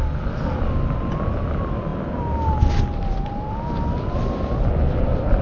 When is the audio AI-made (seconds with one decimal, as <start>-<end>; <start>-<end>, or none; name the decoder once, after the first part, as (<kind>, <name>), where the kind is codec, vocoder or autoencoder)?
none